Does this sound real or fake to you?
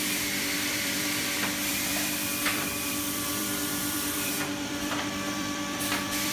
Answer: fake